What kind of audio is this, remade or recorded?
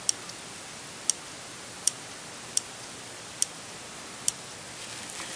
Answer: recorded